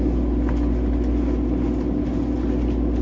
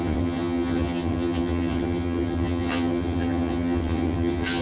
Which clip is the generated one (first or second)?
second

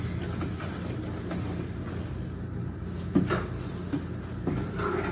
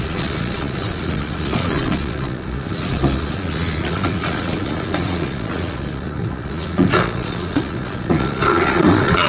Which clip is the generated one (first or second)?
second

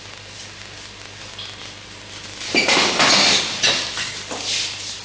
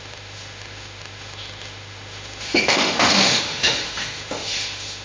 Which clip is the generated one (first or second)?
second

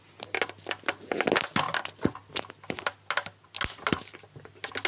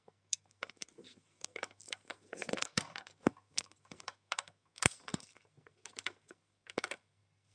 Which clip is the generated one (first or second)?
second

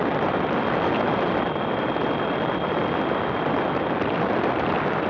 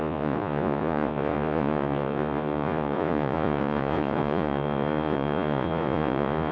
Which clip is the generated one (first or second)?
second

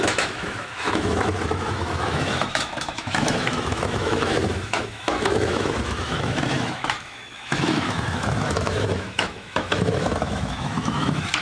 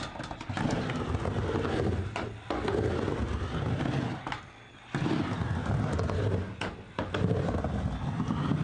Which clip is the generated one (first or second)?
first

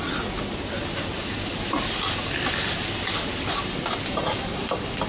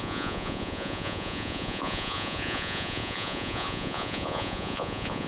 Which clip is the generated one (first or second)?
second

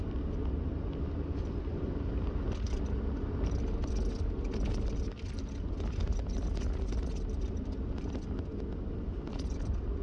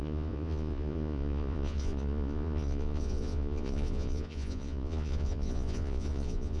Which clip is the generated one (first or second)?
second